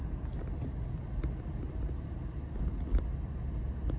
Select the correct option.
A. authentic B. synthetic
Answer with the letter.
A